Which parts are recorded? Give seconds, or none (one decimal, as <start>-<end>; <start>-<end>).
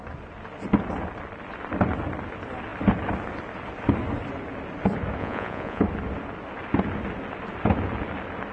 0.0-5.2; 5.8-8.5